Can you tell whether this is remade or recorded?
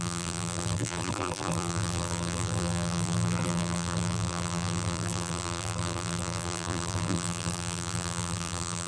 remade